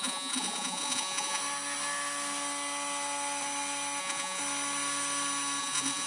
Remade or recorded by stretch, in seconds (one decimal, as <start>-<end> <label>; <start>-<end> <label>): 0.0-1.4 remade; 1.4-4.0 recorded; 4.0-4.4 remade; 4.4-5.6 recorded; 5.6-6.1 remade